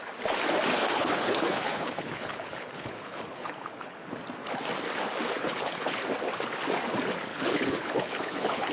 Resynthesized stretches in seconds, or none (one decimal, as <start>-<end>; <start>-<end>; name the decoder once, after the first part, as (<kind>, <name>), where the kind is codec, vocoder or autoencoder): 0.7-4.2 (codec, HILCodec); 5.3-6.0; 7.3-8.7